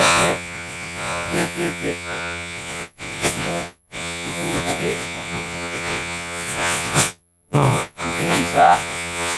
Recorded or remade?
remade